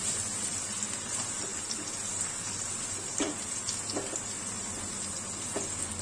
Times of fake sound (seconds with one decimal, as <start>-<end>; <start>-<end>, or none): none